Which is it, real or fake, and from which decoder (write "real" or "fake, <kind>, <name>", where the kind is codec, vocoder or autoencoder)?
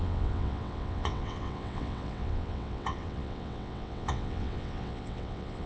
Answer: fake, vocoder, WaveNeXt